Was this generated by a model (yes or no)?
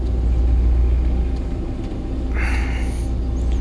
no